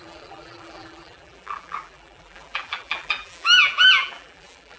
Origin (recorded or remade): remade